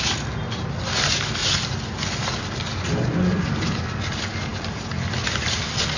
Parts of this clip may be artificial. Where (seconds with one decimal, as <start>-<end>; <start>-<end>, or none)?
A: none